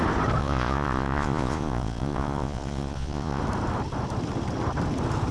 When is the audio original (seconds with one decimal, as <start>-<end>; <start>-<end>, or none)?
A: 0.0-0.4; 3.4-5.3